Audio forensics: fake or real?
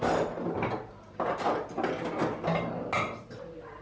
real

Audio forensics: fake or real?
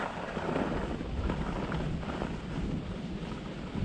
real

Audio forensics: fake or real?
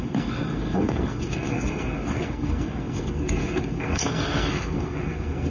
fake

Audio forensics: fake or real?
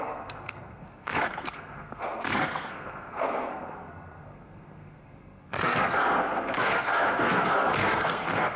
fake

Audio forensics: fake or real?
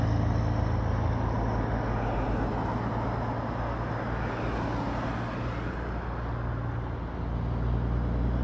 real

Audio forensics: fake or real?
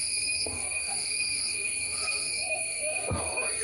fake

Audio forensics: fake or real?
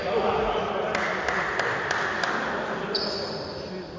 real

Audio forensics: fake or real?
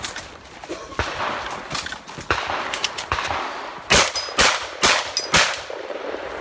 real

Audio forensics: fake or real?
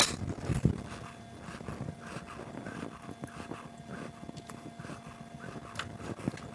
real